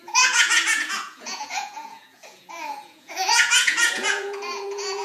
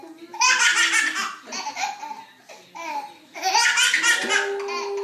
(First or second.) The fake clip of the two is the first